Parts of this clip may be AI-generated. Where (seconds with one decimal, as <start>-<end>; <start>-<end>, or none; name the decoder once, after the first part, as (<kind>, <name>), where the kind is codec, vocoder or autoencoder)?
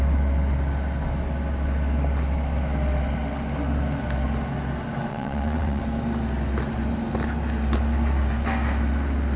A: 5.1-5.8 (vocoder, WaveNeXt)